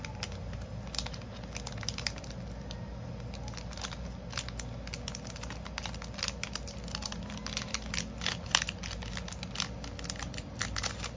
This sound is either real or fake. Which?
real